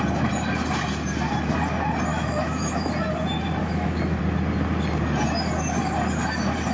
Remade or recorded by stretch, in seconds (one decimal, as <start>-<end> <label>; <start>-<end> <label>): 0.0-2.1 recorded; 2.1-2.9 remade; 2.9-3.6 recorded; 3.6-4.2 remade; 4.2-6.7 recorded

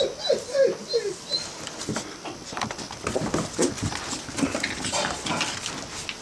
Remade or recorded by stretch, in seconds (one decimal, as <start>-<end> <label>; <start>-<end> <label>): 0.0-3.6 recorded; 3.6-5.3 remade; 5.3-6.2 recorded

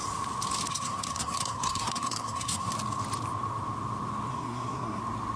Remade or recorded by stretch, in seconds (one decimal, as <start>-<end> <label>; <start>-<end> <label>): 0.0-0.7 recorded; 0.7-2.7 remade; 2.7-4.3 recorded; 4.3-5.0 remade; 5.0-5.4 recorded

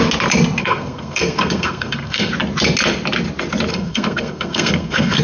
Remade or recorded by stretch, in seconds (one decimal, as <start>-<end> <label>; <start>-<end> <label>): 0.0-0.6 recorded; 0.6-2.3 remade; 2.3-3.7 recorded; 3.7-5.2 remade